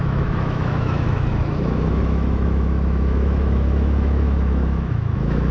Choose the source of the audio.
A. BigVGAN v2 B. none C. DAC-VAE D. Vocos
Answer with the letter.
C